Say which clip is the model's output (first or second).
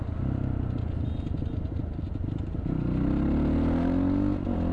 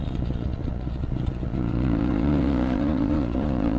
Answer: second